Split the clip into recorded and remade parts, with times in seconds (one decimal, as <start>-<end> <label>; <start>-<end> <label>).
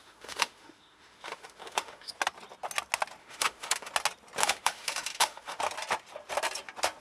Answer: 0.0-2.1 remade; 2.1-3.2 recorded; 3.2-3.9 remade; 3.9-4.4 recorded; 4.4-5.6 remade; 5.6-7.0 recorded